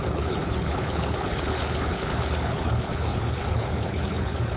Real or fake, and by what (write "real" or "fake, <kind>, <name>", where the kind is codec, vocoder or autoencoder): fake, codec, HILCodec